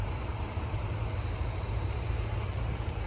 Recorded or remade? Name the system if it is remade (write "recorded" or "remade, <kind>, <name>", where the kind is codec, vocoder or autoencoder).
remade, vocoder, BigVGAN v2